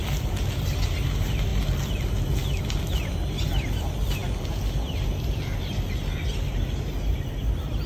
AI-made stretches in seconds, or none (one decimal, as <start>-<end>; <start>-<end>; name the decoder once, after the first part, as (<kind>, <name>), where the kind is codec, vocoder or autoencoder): none